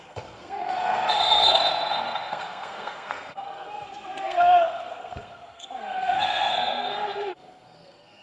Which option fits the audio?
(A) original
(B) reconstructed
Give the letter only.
B